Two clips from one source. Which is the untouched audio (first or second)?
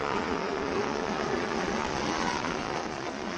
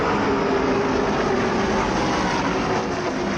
second